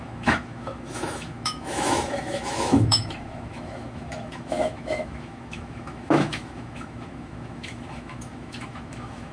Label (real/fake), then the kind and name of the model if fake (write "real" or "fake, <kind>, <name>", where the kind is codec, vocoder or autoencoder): fake, autoencoder, DAC-VAE